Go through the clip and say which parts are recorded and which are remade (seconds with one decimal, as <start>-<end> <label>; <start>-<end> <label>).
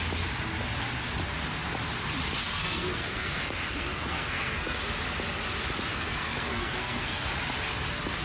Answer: 0.0-2.4 recorded; 2.4-4.8 remade; 4.8-5.9 recorded; 5.9-7.3 remade; 7.3-8.2 recorded